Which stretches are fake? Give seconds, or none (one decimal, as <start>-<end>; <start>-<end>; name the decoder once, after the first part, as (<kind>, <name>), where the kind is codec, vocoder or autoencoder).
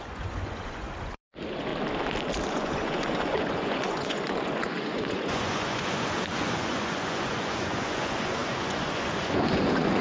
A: 0.0-1.7 (vocoder, Vocos); 2.5-10.0